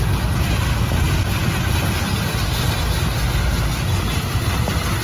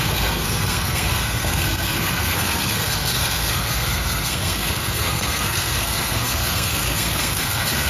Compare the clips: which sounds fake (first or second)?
second